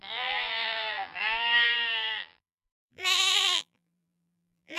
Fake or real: fake